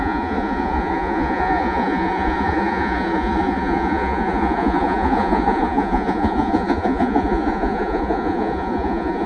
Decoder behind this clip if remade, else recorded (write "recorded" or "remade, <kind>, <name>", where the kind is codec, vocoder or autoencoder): remade, vocoder, Vocos